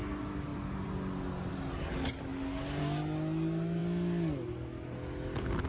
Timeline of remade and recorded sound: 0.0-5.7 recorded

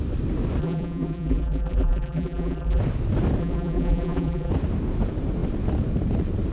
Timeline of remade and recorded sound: 0.0-0.6 recorded; 0.6-2.8 remade; 2.8-3.4 recorded; 3.4-4.5 remade; 4.5-6.5 recorded

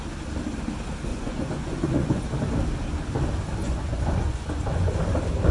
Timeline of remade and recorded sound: 0.0-1.1 recorded; 1.1-2.2 remade; 2.2-3.6 recorded; 3.6-4.9 remade; 4.9-5.5 recorded

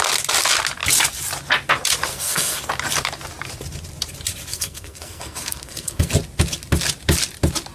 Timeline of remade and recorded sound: 0.0-2.1 recorded; 2.1-2.7 remade; 2.7-4.5 recorded; 4.5-6.1 remade; 6.1-7.7 recorded

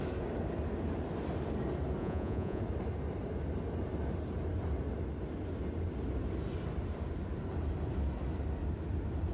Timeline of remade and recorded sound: 0.0-2.0 recorded; 2.0-2.6 remade; 2.6-9.3 recorded